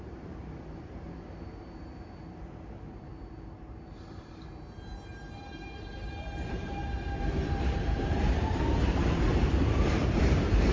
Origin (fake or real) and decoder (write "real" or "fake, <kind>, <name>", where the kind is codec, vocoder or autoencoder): fake, vocoder, BigVGAN v2